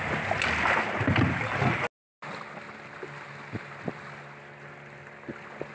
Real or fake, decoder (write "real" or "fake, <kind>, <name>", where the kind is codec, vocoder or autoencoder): real